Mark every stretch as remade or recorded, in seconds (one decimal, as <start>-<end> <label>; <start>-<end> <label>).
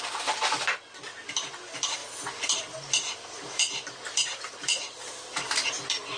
0.0-2.0 recorded; 2.0-5.7 remade; 5.7-6.2 recorded